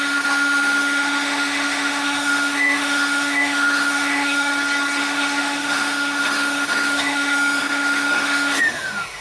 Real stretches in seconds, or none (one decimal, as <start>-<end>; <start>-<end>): 4.5-5.0

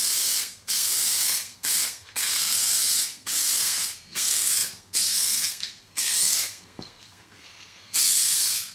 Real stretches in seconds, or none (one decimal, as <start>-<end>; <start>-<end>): none